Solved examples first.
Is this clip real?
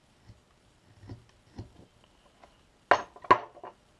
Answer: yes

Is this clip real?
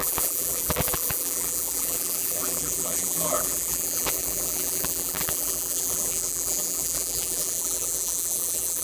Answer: no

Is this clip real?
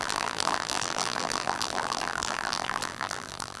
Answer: no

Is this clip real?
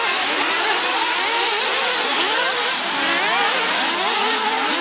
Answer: yes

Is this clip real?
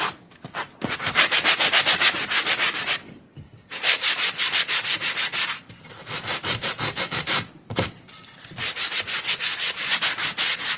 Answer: yes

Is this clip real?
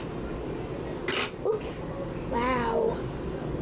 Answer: yes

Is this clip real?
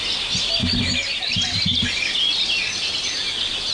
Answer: yes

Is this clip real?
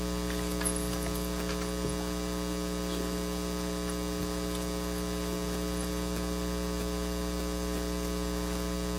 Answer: yes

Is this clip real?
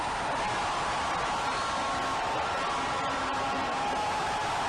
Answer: yes